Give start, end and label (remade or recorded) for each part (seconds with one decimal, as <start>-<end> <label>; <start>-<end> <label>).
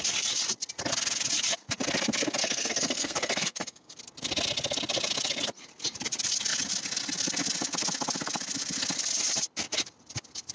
0.0-2.4 recorded; 2.4-4.0 remade; 4.0-10.5 recorded